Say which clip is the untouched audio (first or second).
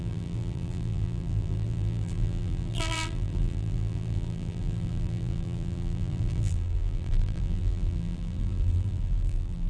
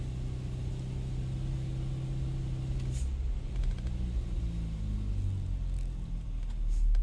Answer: second